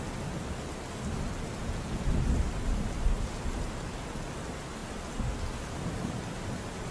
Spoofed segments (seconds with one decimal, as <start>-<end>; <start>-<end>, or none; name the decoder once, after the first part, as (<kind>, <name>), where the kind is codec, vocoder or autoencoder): 1.6-2.1 (vocoder, Vocos)